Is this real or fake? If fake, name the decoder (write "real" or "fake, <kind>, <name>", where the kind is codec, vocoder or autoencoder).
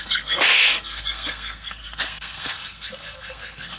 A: fake, codec, SNAC